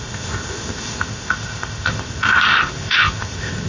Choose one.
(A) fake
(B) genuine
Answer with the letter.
A